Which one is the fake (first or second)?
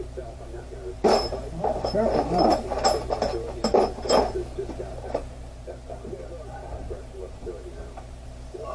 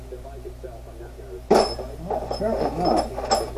first